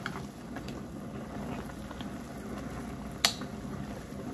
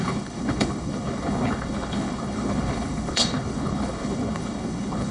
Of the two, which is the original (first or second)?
first